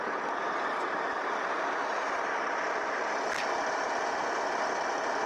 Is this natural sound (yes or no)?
yes